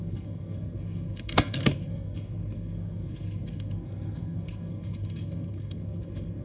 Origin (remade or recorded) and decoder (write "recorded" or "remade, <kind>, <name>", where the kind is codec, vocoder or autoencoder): remade, codec, SNAC